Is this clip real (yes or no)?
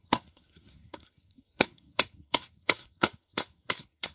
no